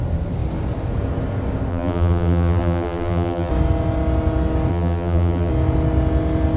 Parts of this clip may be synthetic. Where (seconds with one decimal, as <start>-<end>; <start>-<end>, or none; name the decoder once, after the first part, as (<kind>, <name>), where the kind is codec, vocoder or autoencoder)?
1.7-3.5 (vocoder, BigVGAN v2); 4.7-5.5